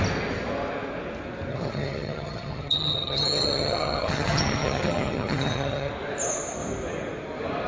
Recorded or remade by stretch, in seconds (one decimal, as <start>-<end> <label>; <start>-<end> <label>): 0.0-1.5 recorded; 1.5-5.9 remade; 5.9-7.7 recorded